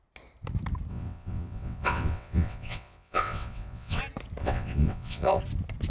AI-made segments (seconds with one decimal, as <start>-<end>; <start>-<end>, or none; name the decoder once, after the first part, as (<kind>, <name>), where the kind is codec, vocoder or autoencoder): 0.9-4.0 (vocoder, WaveNeXt); 4.4-5.4